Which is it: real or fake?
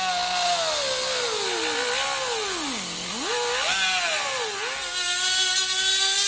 real